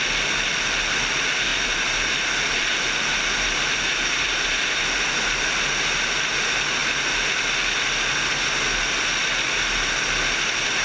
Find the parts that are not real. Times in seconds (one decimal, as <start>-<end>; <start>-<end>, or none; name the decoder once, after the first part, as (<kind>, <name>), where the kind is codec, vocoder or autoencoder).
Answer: 1.5-5.6 (vocoder, BigVGAN v2)